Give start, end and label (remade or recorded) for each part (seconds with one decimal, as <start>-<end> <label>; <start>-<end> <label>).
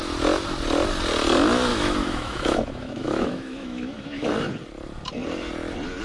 0.0-1.7 recorded; 1.7-4.3 remade; 4.3-6.0 recorded